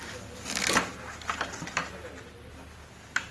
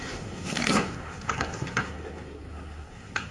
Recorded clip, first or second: first